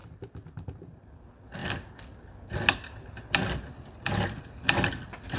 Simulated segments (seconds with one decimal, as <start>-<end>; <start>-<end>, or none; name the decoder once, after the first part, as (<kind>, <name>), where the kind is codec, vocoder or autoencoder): none